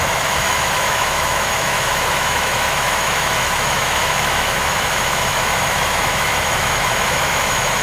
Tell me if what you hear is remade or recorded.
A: remade